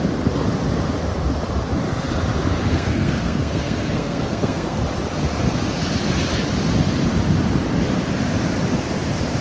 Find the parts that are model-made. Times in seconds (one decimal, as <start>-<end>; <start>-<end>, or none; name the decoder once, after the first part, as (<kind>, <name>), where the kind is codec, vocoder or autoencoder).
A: 2.7-4.8 (codec, SNAC)